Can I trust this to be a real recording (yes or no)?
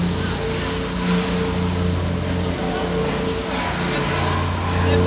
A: yes